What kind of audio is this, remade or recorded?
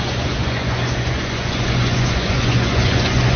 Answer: remade